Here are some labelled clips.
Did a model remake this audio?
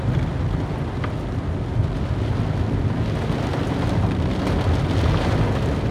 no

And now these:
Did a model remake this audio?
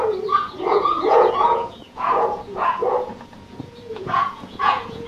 yes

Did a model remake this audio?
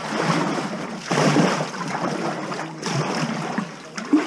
no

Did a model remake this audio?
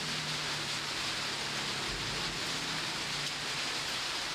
no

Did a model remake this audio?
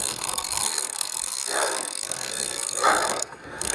yes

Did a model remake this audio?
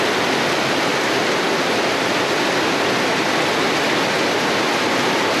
no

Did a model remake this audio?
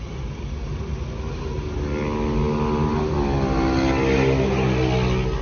no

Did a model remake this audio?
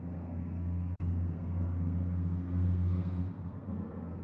yes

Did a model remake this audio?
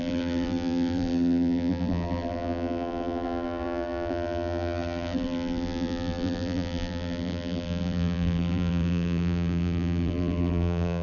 yes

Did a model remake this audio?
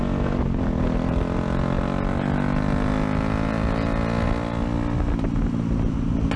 no